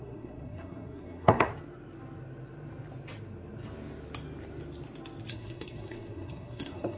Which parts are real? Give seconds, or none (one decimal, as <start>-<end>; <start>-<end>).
1.5-5.3